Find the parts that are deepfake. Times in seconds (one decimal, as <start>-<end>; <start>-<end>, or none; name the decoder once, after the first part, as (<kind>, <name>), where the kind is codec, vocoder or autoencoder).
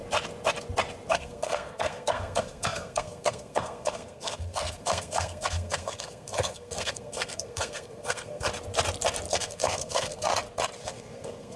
1.1-8.5 (codec, SNAC); 9.3-10.3; 10.8-11.6